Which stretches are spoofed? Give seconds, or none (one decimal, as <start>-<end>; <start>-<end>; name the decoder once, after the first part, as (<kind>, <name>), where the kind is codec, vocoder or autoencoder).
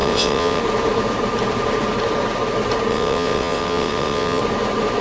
0.0-0.6 (vocoder, WaveNeXt); 2.9-4.4